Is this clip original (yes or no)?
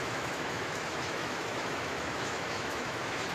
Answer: no